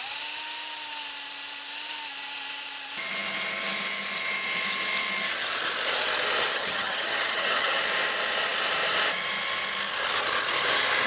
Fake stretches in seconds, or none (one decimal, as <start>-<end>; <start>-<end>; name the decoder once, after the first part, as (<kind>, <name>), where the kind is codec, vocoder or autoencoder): 6.5-7.8 (vocoder, HiFi-GAN)